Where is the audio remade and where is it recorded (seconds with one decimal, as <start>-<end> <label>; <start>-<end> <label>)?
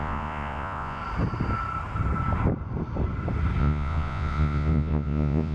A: 0.0-1.0 remade; 1.0-3.6 recorded; 3.6-5.5 remade